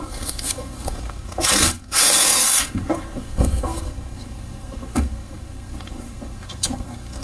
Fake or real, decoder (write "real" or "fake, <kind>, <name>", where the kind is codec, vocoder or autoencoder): fake, codec, SNAC